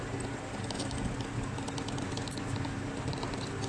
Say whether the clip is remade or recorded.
recorded